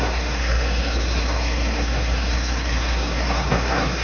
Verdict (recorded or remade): remade